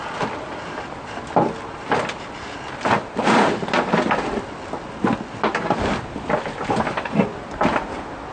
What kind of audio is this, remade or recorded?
recorded